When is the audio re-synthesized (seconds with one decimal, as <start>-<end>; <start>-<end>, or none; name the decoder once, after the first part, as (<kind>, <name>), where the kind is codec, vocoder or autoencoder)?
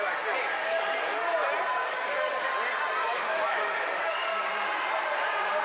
0.6-1.2 (codec, DAC); 1.8-2.4; 3.1-4.4